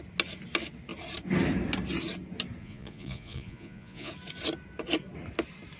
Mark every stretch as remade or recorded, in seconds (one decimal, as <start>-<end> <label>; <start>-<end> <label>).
0.0-2.6 recorded; 2.6-4.1 remade; 4.1-5.8 recorded